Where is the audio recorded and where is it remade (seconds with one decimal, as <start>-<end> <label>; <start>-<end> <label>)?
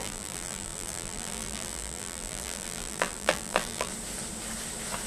0.0-3.9 remade; 3.9-5.1 recorded